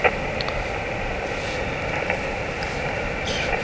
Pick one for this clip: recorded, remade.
recorded